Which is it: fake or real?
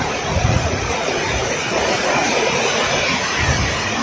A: fake